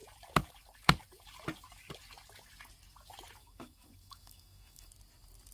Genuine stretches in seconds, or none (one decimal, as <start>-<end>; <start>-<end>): 0.0-3.4; 4.9-5.5